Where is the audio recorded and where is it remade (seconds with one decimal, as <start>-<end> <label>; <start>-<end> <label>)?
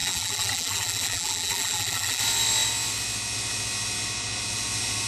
0.0-2.2 remade; 2.2-5.1 recorded